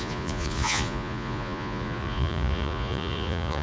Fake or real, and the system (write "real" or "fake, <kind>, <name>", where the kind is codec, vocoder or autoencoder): fake, vocoder, Vocos